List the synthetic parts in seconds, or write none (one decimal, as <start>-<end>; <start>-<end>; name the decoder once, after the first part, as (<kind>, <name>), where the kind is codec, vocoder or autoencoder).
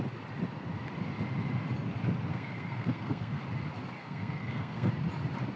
2.3-3.4 (codec, SNAC); 4.0-4.9